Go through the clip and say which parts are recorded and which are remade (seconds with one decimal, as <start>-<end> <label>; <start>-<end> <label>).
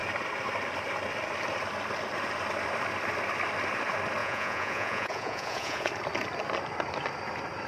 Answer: 0.0-4.2 recorded; 4.2-5.9 remade; 5.9-7.7 recorded